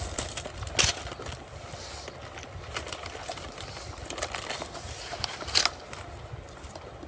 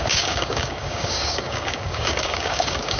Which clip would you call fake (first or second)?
second